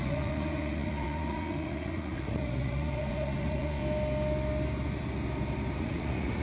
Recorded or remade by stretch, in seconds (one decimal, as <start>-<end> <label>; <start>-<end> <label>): 0.0-3.8 remade; 3.8-5.8 recorded; 5.8-6.4 remade